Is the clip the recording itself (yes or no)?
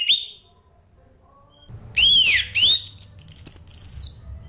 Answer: yes